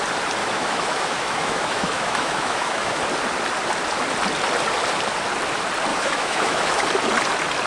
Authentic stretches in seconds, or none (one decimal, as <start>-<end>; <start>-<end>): 0.0-0.4; 3.0-5.9; 6.8-7.7